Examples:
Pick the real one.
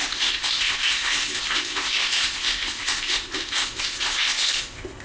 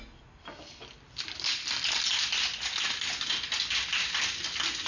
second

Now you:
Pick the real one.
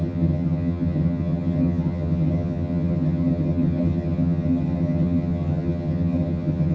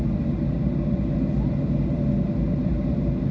second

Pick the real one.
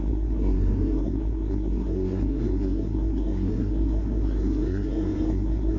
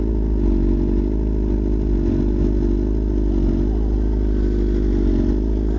second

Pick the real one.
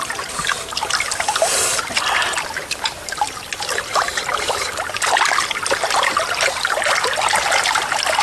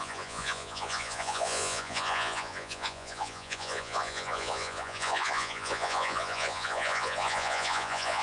first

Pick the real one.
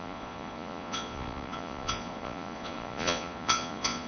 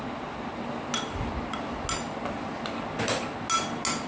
second